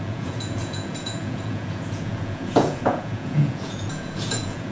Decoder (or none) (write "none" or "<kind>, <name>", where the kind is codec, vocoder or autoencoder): vocoder, Vocos